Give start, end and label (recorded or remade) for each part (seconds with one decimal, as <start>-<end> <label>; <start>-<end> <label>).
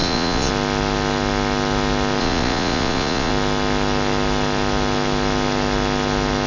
0.0-0.5 remade; 0.5-2.2 recorded; 2.2-3.3 remade; 3.3-6.5 recorded